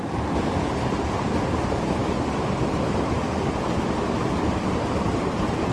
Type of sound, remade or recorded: recorded